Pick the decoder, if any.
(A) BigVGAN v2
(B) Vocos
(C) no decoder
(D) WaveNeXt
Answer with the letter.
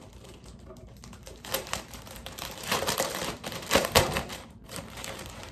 A